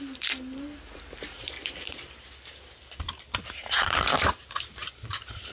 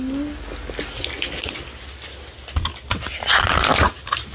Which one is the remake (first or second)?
first